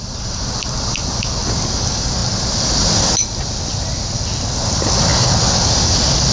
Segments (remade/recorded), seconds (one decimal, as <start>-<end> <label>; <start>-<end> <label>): 0.0-6.3 recorded